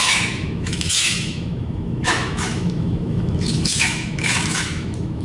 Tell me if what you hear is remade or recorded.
remade